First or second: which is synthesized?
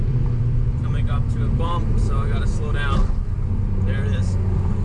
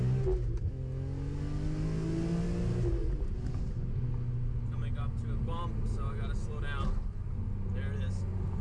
first